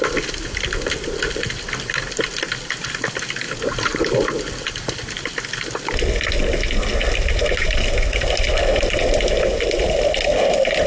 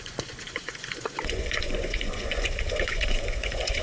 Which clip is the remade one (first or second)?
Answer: second